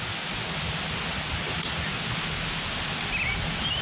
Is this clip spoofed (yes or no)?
no